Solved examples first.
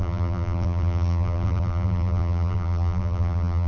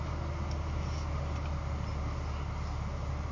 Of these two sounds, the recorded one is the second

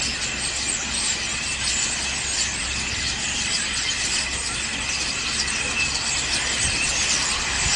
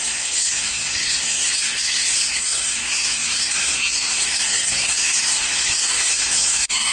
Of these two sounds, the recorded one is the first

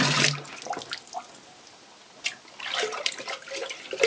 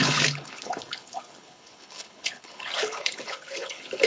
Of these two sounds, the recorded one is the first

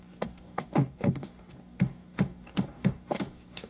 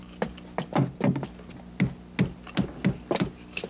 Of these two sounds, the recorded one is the second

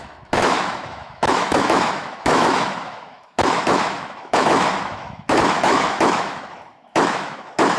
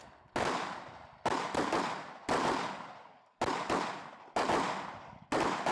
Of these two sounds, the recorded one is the second